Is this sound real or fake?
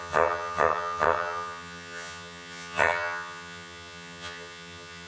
fake